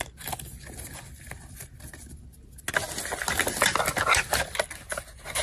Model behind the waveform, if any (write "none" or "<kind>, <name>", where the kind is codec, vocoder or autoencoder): none